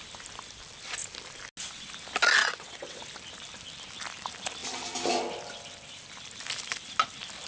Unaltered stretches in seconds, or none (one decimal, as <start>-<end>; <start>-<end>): 0.0-2.4; 3.0-7.5